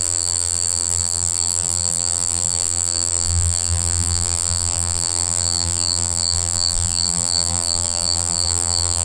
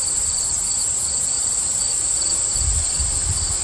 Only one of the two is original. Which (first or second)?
second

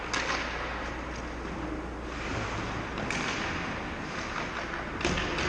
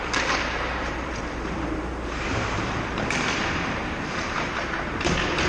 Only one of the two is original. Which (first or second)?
first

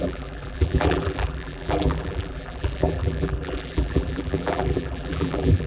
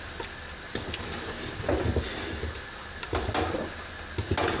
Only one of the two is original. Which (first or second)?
second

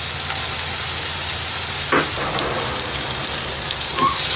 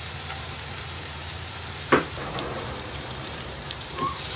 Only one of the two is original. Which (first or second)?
first